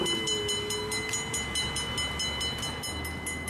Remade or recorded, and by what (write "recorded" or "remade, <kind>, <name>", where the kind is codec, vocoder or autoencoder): recorded